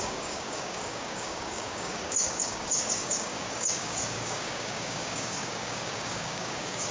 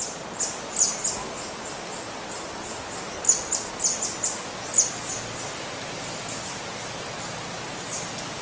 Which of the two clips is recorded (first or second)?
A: second